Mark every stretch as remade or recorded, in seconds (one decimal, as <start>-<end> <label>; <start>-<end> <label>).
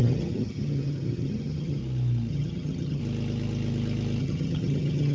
0.0-1.8 remade; 1.8-2.3 recorded; 2.3-3.0 remade; 3.0-4.2 recorded; 4.2-5.1 remade